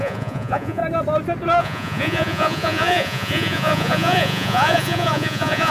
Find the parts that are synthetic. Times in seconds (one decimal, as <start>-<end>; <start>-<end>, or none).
0.0-0.8; 1.6-5.7